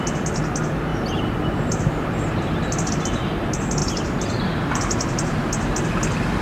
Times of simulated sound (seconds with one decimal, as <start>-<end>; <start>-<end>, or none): 0.9-2.9; 3.8-5.5